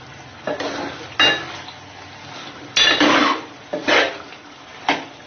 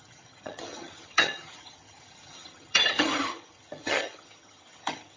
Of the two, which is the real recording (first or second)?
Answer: first